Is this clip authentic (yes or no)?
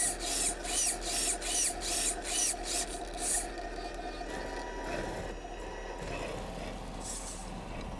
yes